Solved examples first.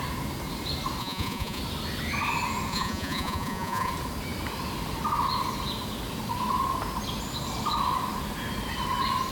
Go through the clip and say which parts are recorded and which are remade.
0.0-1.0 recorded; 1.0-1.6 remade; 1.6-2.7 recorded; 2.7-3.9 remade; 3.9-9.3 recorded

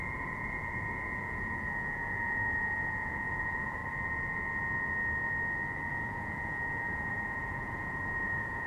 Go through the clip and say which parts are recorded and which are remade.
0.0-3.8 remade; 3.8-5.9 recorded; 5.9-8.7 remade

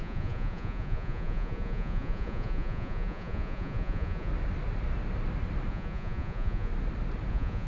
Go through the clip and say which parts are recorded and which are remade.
0.0-4.3 remade; 4.3-5.7 recorded; 5.7-6.7 remade; 6.7-7.3 recorded; 7.3-7.7 remade

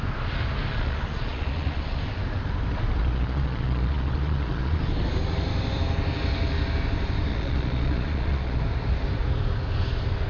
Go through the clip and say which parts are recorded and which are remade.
0.0-0.7 recorded; 0.7-2.0 remade; 2.0-3.0 recorded; 3.0-4.8 remade; 4.8-7.3 recorded; 7.3-8.6 remade; 8.6-10.3 recorded

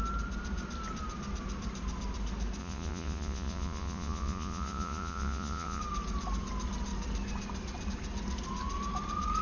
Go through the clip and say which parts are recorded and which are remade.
0.0-2.6 recorded; 2.6-5.8 remade; 5.8-9.4 recorded

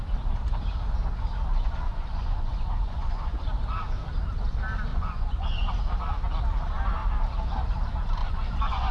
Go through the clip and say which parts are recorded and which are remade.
0.0-1.9 recorded; 1.9-3.4 remade; 3.4-4.9 recorded; 4.9-5.7 remade; 5.7-8.2 recorded; 8.2-8.9 remade